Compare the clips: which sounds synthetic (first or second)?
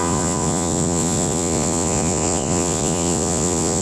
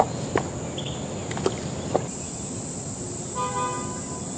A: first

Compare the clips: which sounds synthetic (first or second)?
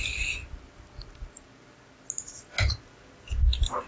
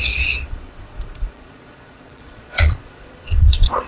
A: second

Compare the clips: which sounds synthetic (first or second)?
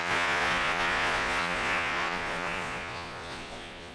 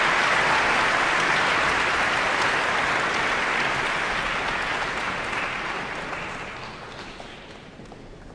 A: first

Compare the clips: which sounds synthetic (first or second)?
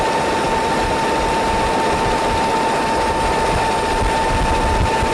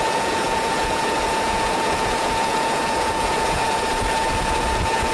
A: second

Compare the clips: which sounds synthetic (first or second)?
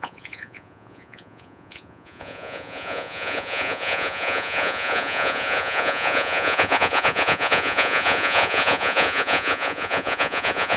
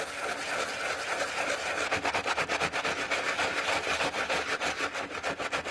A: first